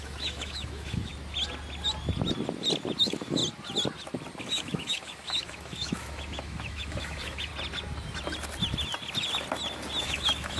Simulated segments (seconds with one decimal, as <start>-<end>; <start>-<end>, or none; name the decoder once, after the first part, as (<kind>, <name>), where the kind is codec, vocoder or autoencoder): 0.0-1.1 (autoencoder, DAC-VAE); 3.0-3.4; 4.4-7.5; 10.0-10.6